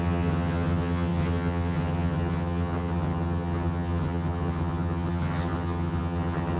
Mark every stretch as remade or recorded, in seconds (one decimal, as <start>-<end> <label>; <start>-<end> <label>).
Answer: 0.0-6.6 remade